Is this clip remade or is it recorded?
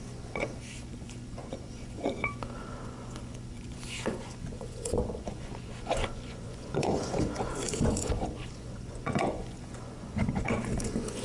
remade